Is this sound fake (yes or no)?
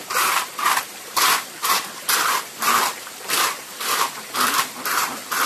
yes